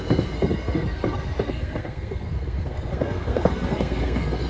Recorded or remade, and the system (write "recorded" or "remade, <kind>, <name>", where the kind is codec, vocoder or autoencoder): remade, codec, SNAC